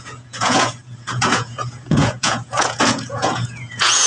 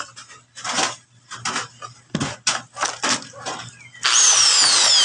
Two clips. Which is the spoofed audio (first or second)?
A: first